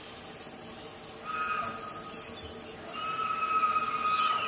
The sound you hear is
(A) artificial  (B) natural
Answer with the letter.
B